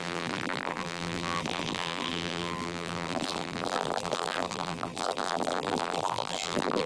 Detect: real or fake fake